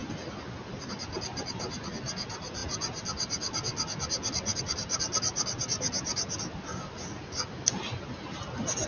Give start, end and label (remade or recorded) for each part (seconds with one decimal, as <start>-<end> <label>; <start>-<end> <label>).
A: 0.0-8.9 recorded